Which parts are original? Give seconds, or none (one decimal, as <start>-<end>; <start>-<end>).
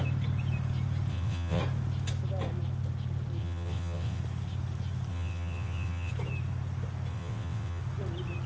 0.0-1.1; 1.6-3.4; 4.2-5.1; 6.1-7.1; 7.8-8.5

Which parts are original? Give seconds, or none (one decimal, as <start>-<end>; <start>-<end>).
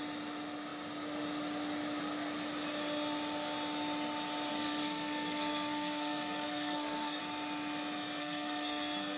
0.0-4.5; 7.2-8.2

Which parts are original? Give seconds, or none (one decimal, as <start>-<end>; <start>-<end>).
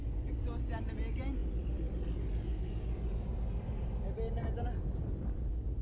0.0-5.8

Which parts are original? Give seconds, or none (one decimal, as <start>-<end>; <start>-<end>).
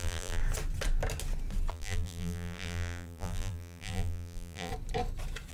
0.4-1.7; 4.7-5.5